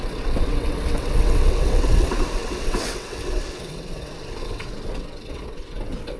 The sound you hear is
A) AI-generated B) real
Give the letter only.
A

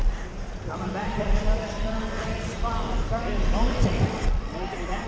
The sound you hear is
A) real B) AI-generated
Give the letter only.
B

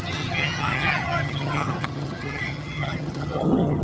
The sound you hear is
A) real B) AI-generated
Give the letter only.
B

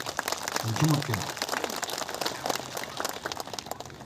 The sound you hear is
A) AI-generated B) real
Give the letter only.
B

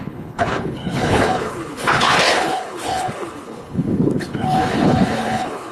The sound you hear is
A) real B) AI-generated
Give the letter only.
B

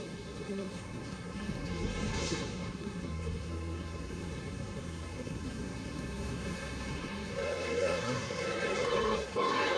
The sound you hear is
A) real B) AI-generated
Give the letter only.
B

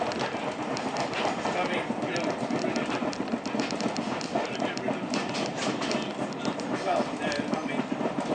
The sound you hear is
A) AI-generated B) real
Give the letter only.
B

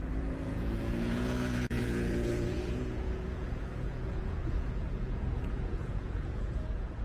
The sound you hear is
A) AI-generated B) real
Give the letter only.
A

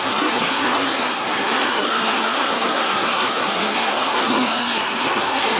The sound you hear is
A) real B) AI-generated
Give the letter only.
B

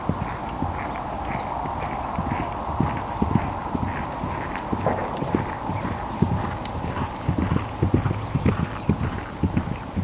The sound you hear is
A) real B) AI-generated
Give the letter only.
A